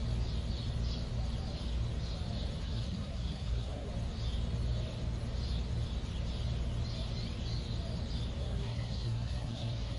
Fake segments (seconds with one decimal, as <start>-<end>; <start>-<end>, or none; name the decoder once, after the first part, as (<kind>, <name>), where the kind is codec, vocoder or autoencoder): 2.6-3.9 (codec, SNAC); 8.4-10.0